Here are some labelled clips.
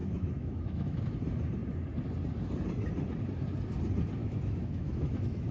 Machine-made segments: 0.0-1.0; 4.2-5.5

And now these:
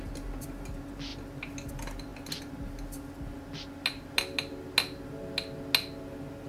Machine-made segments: none

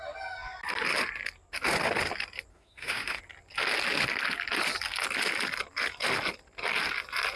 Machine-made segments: 2.5-3.2

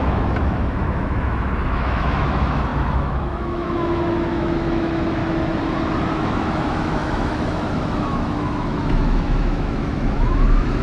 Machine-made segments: 0.0-5.2; 6.1-10.8